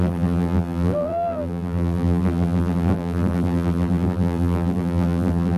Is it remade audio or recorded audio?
remade